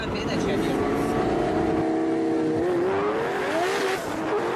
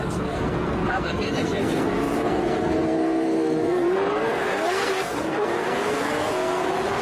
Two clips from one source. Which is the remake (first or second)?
second